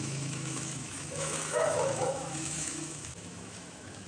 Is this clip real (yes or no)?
no